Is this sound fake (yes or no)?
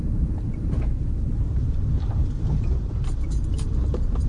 yes